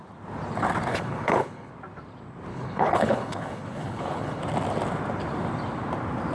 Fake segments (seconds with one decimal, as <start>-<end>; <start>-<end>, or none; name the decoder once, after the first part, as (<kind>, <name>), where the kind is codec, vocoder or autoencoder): 0.9-1.7 (codec, HILCodec); 2.5-4.4